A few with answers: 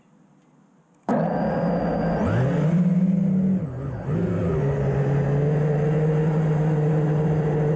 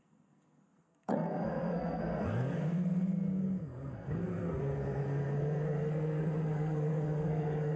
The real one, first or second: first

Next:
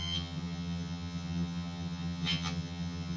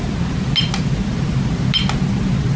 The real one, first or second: second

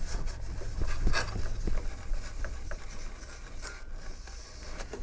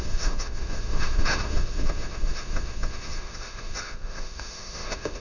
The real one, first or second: first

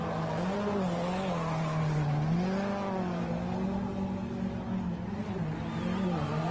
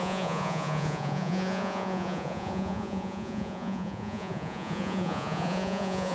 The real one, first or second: first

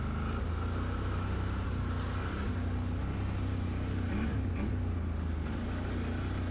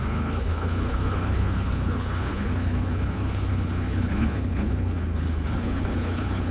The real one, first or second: first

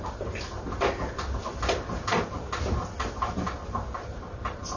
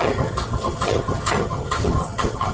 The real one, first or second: first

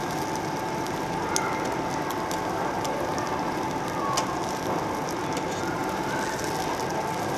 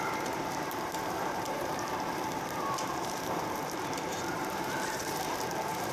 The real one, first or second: first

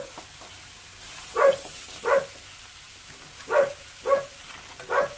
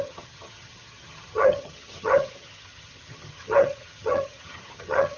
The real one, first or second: first